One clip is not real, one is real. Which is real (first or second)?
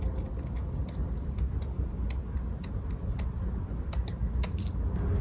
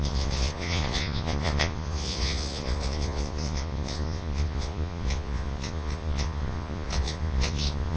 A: first